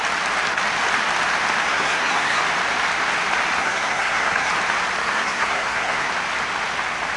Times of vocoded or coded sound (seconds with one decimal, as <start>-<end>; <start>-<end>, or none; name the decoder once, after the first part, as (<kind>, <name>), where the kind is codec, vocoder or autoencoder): 1.7-2.4 (codec, SNAC); 3.6-4.5; 5.0-6.1